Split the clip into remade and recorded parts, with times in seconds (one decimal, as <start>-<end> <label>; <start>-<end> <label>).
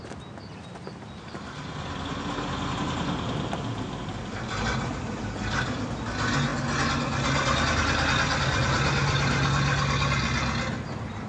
0.0-11.3 recorded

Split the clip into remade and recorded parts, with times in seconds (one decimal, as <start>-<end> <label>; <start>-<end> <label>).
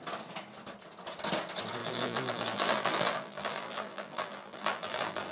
0.0-1.8 recorded; 1.8-5.3 remade